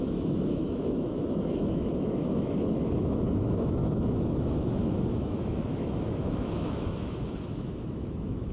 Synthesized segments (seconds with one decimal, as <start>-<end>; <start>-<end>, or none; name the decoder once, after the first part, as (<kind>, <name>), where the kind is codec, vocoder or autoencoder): 0.0-8.5 (autoencoder, DAC-VAE)